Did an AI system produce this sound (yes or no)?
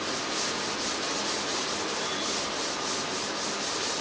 no